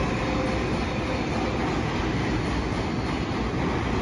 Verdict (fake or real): real